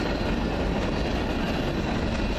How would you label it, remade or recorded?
recorded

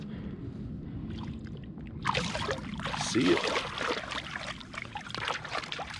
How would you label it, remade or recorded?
recorded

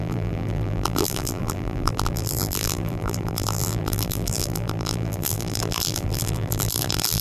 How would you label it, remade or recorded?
remade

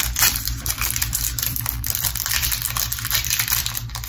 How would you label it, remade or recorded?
remade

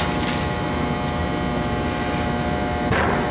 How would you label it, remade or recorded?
recorded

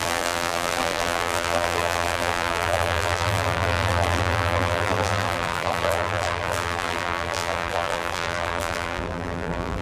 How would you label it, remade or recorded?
remade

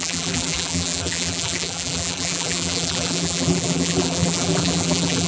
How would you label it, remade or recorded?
remade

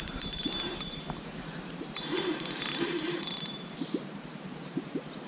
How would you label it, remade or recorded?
remade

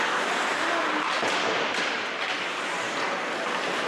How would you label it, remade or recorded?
recorded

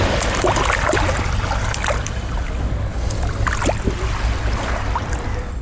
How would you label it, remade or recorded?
remade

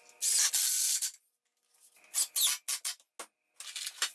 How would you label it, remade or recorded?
recorded